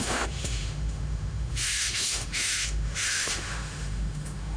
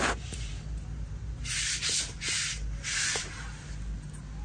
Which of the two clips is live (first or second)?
second